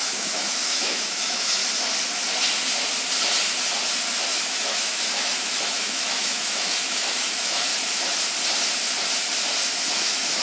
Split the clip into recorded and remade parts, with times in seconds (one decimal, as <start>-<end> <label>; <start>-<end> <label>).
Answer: 0.0-1.6 remade; 1.6-4.3 recorded; 4.3-7.7 remade; 7.7-9.9 recorded; 9.9-10.4 remade